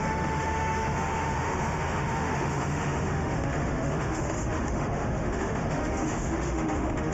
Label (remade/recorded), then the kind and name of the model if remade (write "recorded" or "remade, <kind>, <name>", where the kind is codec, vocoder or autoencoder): remade, autoencoder, DAC-VAE